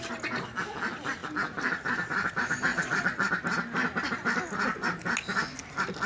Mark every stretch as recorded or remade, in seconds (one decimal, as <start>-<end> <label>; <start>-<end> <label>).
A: 0.0-2.7 recorded; 2.7-3.3 remade; 3.3-6.1 recorded

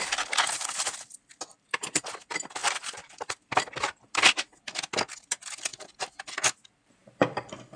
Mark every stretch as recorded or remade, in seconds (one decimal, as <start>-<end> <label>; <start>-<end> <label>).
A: 0.0-1.5 recorded; 1.5-2.0 remade; 2.0-2.6 recorded; 2.6-3.7 remade; 3.7-7.8 recorded

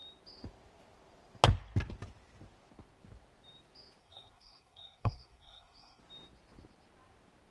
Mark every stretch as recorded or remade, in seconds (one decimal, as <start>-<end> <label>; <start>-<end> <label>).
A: 0.0-4.0 recorded; 4.0-6.0 remade; 6.0-7.5 recorded

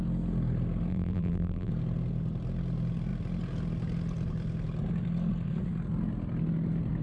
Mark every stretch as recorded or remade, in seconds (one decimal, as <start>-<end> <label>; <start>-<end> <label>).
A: 0.0-0.9 recorded; 0.9-1.7 remade; 1.7-7.0 recorded

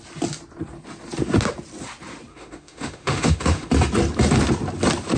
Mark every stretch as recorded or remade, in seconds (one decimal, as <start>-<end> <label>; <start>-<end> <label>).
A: 0.0-2.3 recorded; 2.3-3.7 remade; 3.7-5.2 recorded

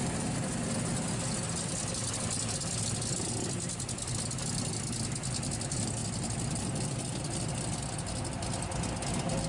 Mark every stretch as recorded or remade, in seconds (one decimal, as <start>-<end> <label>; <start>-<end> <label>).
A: 0.0-9.5 recorded

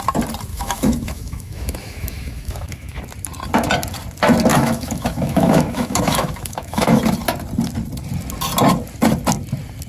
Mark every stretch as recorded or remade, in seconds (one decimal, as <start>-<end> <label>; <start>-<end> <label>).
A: 0.0-0.5 recorded; 0.5-3.0 remade; 3.0-4.5 recorded; 4.5-7.0 remade; 7.0-9.9 recorded